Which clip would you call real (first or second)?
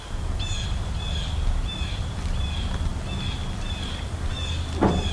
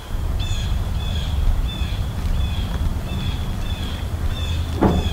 first